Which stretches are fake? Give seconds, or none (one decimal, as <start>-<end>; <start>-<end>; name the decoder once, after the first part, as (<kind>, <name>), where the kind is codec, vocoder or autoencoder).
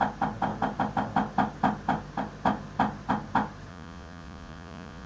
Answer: 3.7-5.1 (vocoder, Vocos)